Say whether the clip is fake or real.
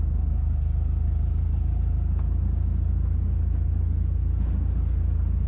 real